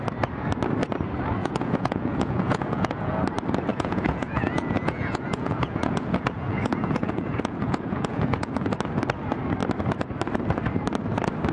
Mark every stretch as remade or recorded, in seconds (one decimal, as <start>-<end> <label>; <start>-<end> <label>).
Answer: 0.0-1.4 recorded; 1.4-3.2 remade; 3.2-3.7 recorded; 3.7-8.7 remade; 8.7-11.5 recorded